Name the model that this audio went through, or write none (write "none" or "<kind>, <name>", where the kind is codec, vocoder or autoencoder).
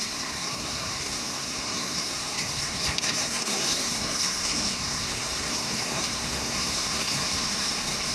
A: codec, SNAC